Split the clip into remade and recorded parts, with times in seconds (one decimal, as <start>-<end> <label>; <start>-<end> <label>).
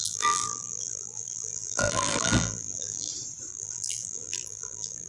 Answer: 0.0-3.1 remade; 3.1-3.5 recorded; 3.5-5.1 remade